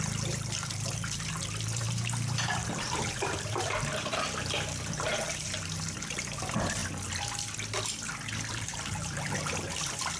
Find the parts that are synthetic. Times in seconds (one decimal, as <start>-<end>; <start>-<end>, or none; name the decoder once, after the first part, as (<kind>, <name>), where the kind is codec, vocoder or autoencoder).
0.0-6.8 (vocoder, BigVGAN v2); 8.5-10.2